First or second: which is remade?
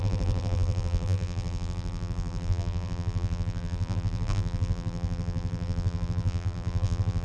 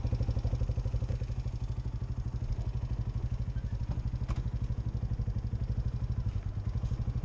first